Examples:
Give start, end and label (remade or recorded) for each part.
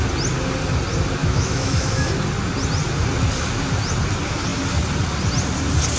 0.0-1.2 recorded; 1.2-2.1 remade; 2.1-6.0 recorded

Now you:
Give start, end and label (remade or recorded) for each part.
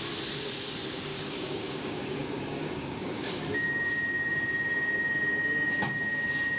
0.0-1.1 recorded; 1.1-3.4 remade; 3.4-6.6 recorded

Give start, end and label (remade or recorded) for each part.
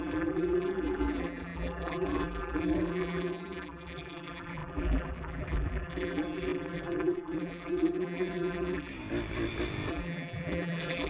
0.0-8.9 remade; 8.9-9.9 recorded; 9.9-11.1 remade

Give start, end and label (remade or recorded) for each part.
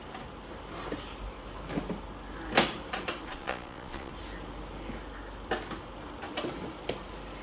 0.0-3.3 recorded; 3.3-4.1 remade; 4.1-7.4 recorded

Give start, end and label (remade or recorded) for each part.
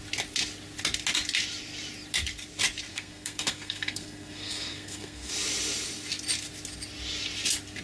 0.0-2.9 recorded; 2.9-5.3 remade; 5.3-7.8 recorded